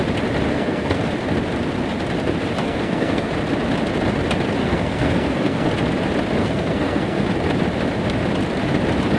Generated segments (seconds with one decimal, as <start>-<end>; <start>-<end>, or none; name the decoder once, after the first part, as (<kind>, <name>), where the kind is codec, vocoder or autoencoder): 0.5-1.1 (codec, SNAC); 2.6-3.3; 4.6-5.7; 6.4-7.2